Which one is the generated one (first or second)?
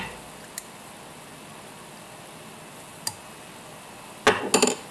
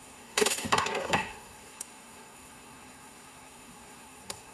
second